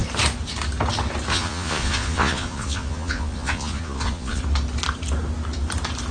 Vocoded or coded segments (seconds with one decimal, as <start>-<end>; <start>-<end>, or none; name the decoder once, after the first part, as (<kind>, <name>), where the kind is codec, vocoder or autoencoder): 1.3-4.4 (vocoder, Vocos)